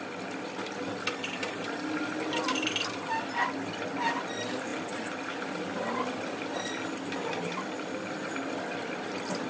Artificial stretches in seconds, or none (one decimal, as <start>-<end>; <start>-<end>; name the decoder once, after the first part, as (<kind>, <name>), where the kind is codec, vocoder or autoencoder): none